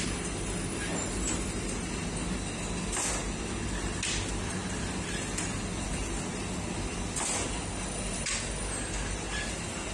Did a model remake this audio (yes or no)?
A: no